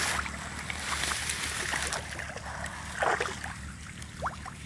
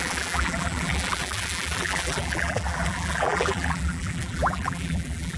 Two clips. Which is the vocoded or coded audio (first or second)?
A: second